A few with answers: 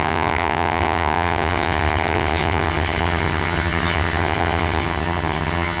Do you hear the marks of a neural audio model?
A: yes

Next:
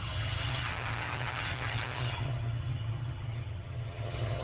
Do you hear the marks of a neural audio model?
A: yes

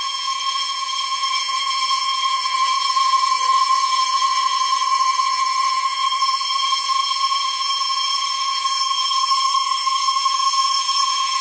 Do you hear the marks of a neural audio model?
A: yes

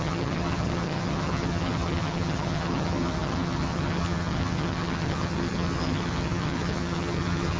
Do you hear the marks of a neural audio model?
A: yes